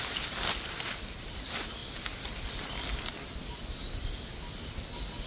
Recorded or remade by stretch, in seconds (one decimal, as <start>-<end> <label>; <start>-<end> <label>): 0.0-5.3 recorded

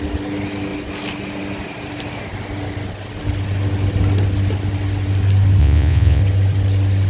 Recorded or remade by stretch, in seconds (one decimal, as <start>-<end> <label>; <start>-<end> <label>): 0.0-5.6 recorded; 5.6-6.2 remade; 6.2-7.1 recorded

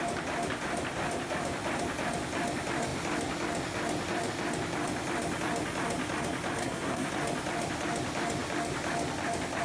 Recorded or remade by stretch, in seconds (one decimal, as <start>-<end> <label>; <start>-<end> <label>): 0.0-6.6 recorded; 6.6-7.1 remade; 7.1-9.6 recorded